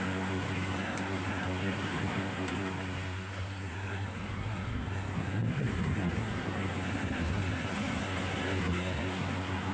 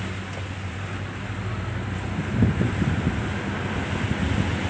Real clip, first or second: second